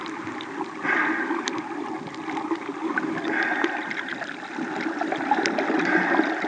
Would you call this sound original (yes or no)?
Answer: yes